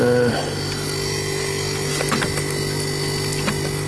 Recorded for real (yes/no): yes